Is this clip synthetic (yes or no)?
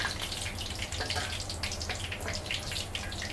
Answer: no